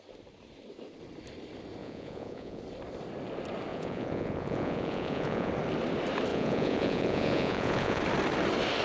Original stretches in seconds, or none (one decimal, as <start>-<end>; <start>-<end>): 0.0-1.8; 2.6-3.7; 5.5-6.3; 8.0-8.8